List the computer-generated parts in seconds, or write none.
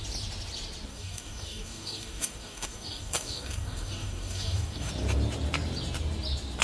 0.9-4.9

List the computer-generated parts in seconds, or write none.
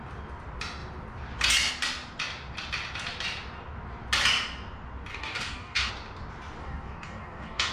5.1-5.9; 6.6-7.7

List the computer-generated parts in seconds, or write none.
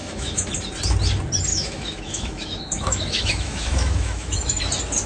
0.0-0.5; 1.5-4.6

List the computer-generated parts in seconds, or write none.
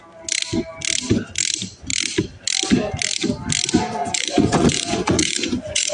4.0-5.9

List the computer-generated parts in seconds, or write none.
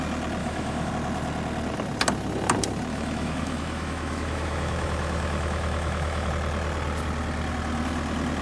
0.4-0.9; 2.9-6.3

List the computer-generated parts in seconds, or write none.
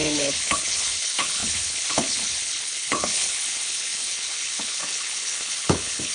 0.0-6.1